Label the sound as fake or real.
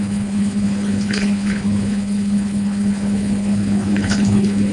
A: fake